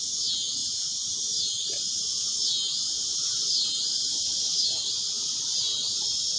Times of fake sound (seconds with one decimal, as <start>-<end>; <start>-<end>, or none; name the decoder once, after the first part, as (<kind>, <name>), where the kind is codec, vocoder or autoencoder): 0.6-1.9 (vocoder, BigVGAN v2); 3.3-6.4